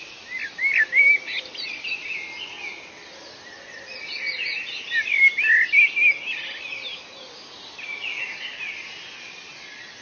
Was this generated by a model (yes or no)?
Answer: no